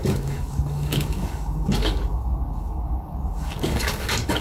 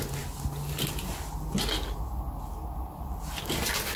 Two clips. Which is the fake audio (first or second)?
first